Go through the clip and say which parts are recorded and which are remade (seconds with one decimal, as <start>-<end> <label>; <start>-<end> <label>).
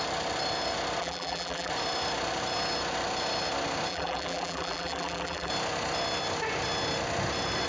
0.0-1.0 recorded; 1.0-1.7 remade; 1.7-3.9 recorded; 3.9-5.5 remade; 5.5-7.7 recorded